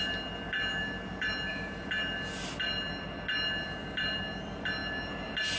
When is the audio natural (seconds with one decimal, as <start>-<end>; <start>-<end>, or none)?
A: 0.0-5.6